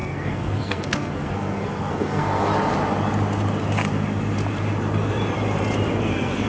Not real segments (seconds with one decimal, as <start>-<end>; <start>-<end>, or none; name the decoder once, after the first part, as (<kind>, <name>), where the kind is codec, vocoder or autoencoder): 0.0-2.5 (codec, SNAC); 6.0-6.5